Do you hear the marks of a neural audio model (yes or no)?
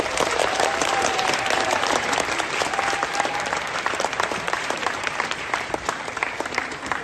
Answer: yes